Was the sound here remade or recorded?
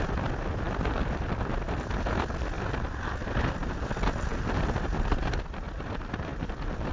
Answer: remade